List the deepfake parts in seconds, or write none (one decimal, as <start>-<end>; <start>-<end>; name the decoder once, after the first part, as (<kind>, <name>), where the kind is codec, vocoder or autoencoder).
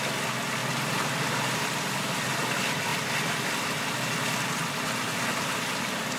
0.6-2.3 (vocoder, BigVGAN v2)